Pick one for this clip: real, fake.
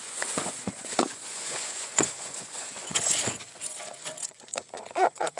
fake